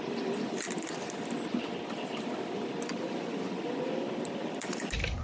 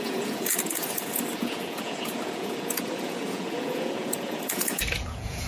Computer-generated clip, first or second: second